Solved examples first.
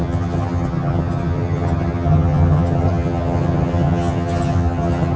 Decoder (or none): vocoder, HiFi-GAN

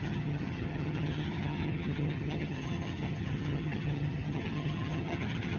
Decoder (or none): vocoder, HiFi-GAN